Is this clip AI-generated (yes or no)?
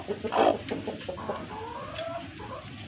no